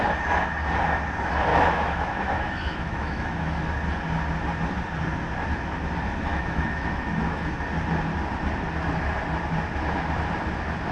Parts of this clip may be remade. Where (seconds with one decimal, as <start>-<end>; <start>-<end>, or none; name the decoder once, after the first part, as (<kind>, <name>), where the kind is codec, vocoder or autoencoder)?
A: 1.5-3.6 (autoencoder, DAC-VAE); 6.3-7.5

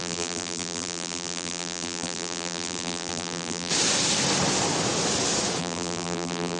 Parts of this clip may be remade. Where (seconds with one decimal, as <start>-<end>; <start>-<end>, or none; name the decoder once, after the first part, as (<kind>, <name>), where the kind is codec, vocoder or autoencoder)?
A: 0.0-3.7 (vocoder, BigVGAN v2); 5.6-6.6

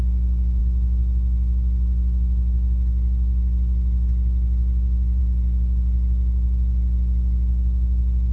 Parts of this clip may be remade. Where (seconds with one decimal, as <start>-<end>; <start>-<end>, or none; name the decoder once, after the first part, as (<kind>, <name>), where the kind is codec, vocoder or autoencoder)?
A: none

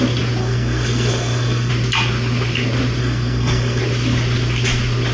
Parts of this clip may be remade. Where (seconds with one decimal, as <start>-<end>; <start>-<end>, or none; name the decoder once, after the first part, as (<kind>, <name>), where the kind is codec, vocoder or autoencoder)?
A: 0.4-1.7 (codec, SNAC); 3.0-3.8

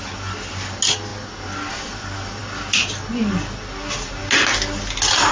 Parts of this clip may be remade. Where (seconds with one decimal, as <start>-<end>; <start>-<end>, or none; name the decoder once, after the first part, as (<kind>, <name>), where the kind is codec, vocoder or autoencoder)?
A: none

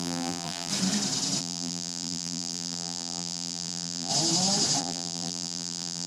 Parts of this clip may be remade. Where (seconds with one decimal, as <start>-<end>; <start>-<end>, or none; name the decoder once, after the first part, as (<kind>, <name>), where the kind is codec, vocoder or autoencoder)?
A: 0.0-0.7 (vocoder, BigVGAN v2); 1.4-4.1; 4.8-6.1

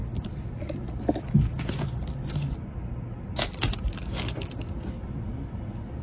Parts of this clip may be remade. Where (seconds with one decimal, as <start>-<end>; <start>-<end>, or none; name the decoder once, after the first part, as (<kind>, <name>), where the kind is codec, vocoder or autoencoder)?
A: none